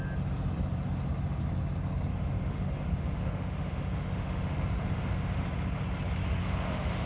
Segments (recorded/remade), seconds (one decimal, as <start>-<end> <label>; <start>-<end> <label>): 0.0-2.1 recorded; 2.1-5.4 remade; 5.4-6.4 recorded; 6.4-7.1 remade